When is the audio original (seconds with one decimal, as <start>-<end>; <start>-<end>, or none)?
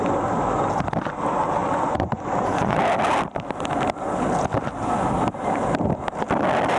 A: 0.0-1.6; 2.8-6.8